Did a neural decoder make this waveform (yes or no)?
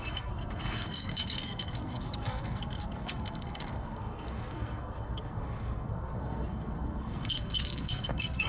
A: yes